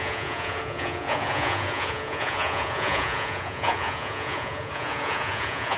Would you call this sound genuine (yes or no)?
no